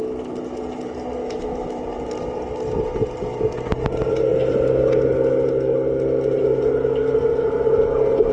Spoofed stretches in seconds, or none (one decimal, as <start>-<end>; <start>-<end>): 1.2-1.8